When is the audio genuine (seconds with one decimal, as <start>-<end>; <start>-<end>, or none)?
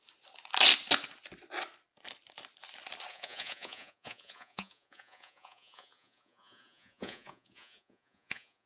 0.0-3.1